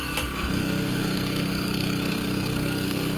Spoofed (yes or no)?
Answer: yes